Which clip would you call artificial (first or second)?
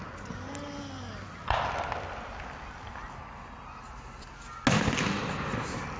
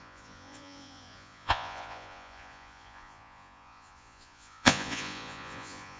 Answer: second